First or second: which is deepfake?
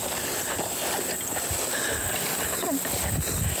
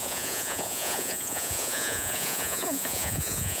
second